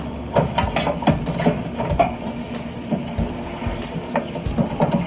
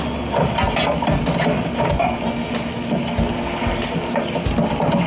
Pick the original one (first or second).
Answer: second